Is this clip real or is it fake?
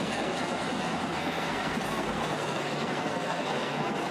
fake